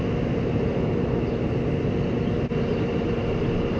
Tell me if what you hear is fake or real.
real